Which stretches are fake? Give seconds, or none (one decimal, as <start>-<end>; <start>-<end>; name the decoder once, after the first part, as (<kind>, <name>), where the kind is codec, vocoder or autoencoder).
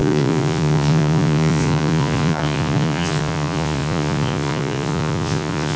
0.0-5.8 (vocoder, Vocos)